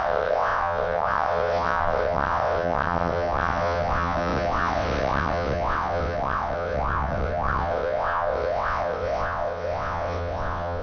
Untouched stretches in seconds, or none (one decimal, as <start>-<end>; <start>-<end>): none